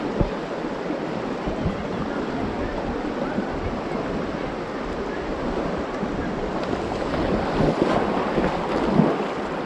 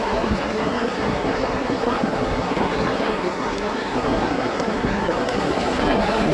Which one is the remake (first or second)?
second